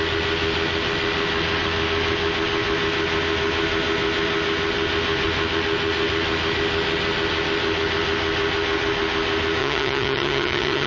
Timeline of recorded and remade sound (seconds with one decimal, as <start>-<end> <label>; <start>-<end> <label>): 0.0-9.6 recorded; 9.6-10.9 remade